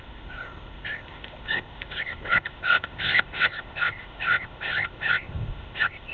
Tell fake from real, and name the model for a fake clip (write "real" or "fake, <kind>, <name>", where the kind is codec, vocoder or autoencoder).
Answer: fake, codec, ZipCodec